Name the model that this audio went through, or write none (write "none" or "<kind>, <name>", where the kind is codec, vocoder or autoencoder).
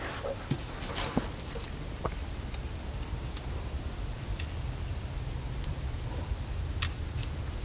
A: none